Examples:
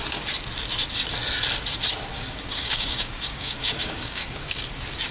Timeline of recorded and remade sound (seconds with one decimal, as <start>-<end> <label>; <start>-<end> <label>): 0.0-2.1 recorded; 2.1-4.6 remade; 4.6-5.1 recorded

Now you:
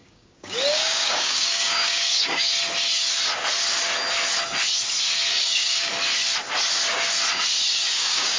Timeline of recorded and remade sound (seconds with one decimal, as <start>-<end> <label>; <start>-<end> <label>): 0.0-2.5 remade; 2.5-5.3 recorded; 5.3-5.9 remade; 5.9-7.7 recorded; 7.7-8.4 remade

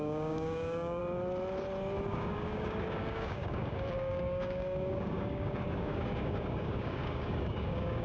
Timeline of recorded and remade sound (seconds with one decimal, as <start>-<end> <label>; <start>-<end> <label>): 0.0-1.0 remade; 1.0-2.1 recorded; 2.1-8.0 remade

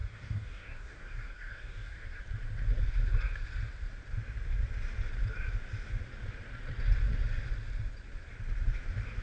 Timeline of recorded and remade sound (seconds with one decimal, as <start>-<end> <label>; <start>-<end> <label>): 0.0-2.2 remade; 2.2-9.2 recorded